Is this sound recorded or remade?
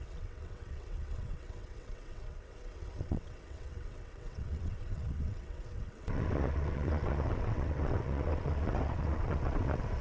remade